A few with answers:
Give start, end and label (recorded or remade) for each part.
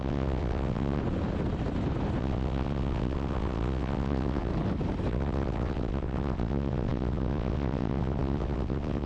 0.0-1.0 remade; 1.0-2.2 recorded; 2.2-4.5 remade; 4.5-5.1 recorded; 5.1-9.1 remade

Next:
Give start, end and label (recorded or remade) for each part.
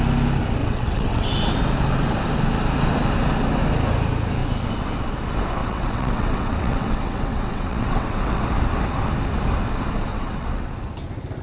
0.0-0.6 recorded; 0.6-1.3 remade; 1.3-5.6 recorded; 5.6-8.4 remade; 8.4-10.1 recorded; 10.1-10.7 remade; 10.7-11.4 recorded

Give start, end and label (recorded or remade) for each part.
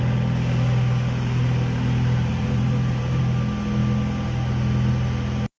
0.0-2.3 recorded; 2.3-3.2 remade; 3.2-5.6 recorded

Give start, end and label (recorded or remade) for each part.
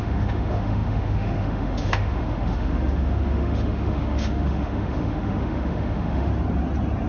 0.0-6.3 remade; 6.3-7.1 recorded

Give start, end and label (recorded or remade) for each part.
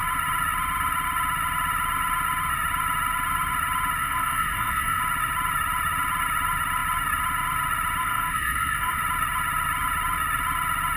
0.0-4.0 recorded; 4.0-5.0 remade; 5.0-8.0 recorded; 8.0-9.0 remade; 9.0-11.0 recorded